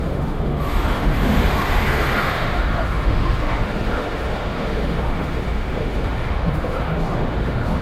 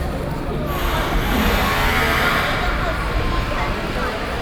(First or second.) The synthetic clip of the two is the first